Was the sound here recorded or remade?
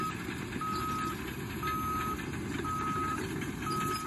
recorded